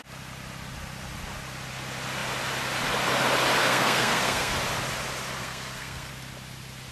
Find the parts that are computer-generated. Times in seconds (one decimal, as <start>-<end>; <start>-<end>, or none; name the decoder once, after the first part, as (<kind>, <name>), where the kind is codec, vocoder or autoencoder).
3.6-4.5 (codec, SNAC); 5.4-6.1